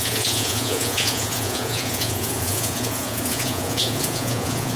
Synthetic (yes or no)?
yes